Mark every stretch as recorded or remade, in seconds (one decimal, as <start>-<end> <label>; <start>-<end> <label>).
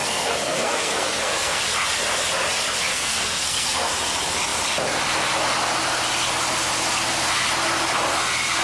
0.0-1.6 remade; 1.6-2.9 recorded; 2.9-3.9 remade; 3.9-8.6 recorded